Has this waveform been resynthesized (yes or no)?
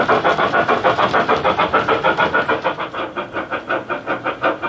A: no